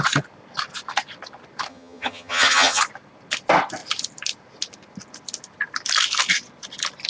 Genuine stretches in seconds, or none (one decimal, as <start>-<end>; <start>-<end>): 0.0-1.7; 2.8-7.1